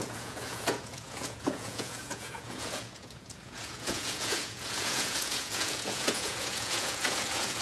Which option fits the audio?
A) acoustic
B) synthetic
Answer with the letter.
B